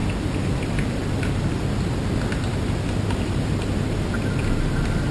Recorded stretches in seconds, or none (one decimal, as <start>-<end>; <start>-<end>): 0.0-5.1